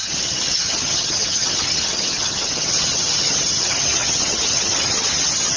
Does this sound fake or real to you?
fake